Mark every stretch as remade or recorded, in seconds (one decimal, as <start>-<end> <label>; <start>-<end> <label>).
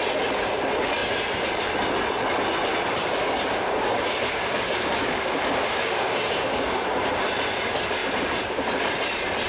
0.0-3.0 recorded; 3.0-7.3 remade; 7.3-9.5 recorded